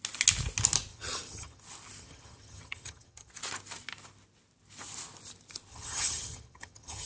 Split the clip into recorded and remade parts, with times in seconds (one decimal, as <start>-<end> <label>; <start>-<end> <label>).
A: 0.0-0.9 recorded; 0.9-1.6 remade; 1.6-2.0 recorded; 2.0-3.3 remade; 3.3-5.7 recorded; 5.7-7.1 remade